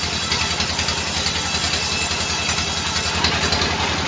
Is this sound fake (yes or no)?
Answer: no